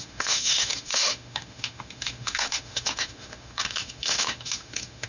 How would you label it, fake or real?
fake